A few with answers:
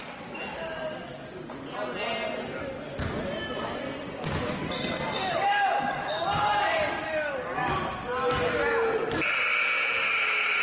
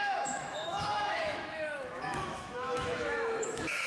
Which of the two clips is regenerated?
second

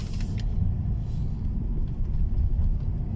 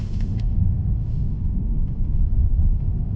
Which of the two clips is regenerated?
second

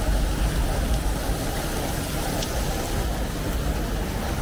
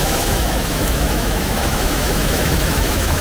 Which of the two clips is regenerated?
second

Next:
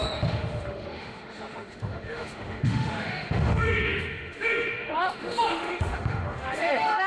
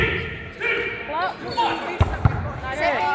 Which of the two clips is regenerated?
first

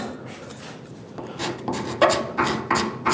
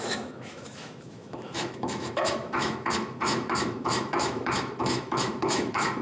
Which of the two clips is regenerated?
second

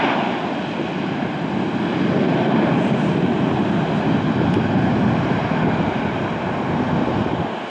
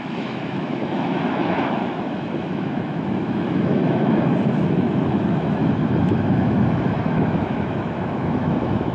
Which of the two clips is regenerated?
second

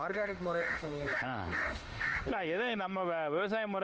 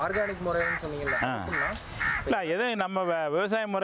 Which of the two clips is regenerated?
first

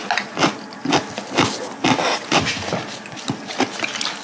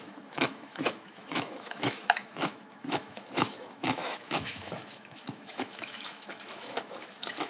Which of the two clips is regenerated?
second